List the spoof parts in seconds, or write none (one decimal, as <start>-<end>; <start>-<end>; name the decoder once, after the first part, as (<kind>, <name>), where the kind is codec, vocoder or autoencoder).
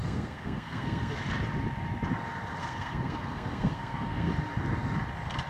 0.0-1.2 (codec, SNAC); 2.6-4.3